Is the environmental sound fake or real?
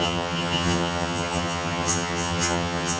fake